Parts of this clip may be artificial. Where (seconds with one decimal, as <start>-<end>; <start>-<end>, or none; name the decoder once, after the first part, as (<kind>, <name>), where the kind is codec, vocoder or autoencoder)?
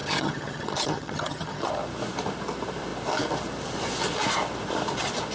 0.0-1.7 (vocoder, HiFi-GAN)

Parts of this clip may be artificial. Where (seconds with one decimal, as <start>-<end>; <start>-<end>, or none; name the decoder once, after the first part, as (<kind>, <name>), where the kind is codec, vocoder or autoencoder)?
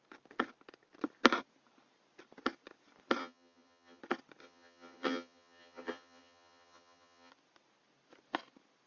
3.2-4.0 (vocoder, HiFi-GAN); 4.4-7.3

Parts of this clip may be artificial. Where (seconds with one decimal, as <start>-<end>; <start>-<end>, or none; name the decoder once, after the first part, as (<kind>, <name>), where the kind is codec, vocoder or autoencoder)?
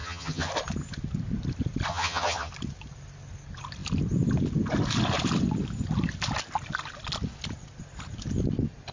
0.0-0.5 (vocoder, HiFi-GAN); 1.9-2.5